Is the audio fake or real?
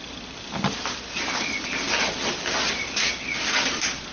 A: real